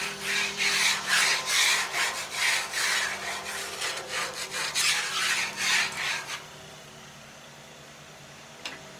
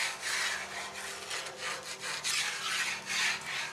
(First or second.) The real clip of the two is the second